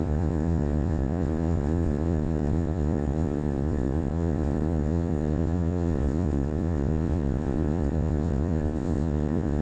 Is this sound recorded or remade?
remade